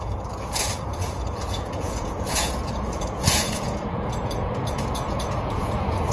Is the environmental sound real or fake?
fake